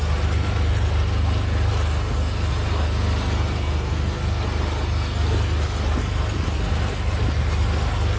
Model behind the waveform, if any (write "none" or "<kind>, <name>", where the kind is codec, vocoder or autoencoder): none